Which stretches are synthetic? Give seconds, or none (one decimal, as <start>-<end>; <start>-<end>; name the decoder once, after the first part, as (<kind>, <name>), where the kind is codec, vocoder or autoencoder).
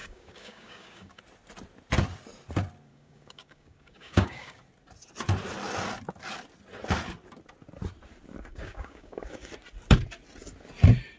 0.0-1.2 (codec, DAC); 2.9-4.6; 8.5-9.5